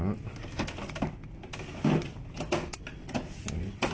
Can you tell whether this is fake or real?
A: real